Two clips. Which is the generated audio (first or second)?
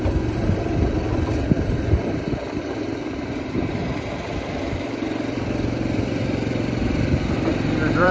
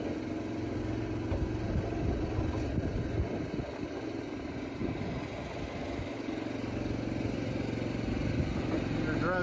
first